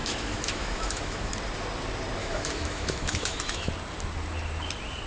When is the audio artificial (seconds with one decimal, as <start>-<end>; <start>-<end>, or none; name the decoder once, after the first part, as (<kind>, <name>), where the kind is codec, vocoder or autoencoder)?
0.0-1.3 (autoencoder, DAC-VAE); 2.2-3.7